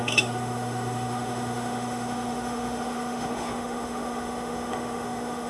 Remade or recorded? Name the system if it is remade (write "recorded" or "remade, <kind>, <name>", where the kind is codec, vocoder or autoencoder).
remade, autoencoder, DAC-VAE